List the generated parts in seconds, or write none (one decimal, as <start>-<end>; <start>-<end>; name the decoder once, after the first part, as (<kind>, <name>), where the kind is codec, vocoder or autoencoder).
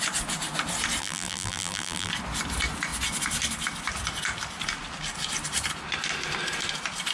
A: 1.0-2.1 (vocoder, BigVGAN v2)